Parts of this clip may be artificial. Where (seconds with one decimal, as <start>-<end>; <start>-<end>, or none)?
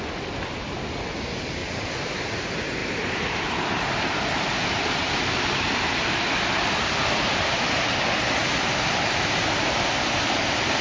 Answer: 1.6-2.4; 2.8-8.0; 8.4-9.9